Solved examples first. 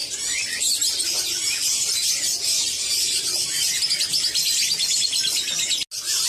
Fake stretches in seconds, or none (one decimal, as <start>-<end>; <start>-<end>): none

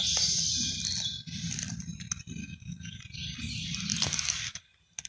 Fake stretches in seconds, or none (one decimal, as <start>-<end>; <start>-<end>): 2.4-3.0; 3.9-4.6

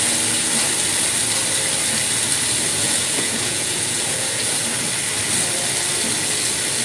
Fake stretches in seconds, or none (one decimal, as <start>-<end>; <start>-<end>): 2.7-4.6

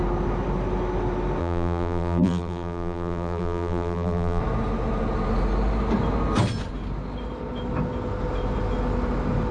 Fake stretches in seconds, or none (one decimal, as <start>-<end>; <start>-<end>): 1.4-4.4

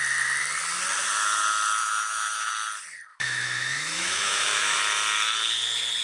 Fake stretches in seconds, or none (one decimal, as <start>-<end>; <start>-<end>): 1.8-2.5; 3.1-4.8

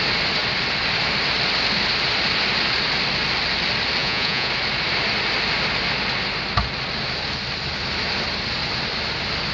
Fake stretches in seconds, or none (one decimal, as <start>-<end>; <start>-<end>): 4.0-4.5

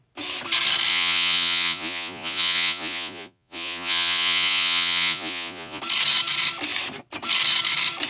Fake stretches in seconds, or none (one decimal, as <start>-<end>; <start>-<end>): 0.9-5.8

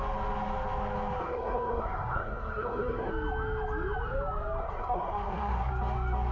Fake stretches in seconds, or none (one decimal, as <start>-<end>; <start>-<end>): 1.2-3.1; 4.6-5.7